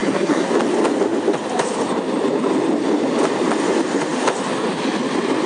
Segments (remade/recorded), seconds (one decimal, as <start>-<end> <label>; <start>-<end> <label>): 0.0-0.5 remade; 0.5-5.5 recorded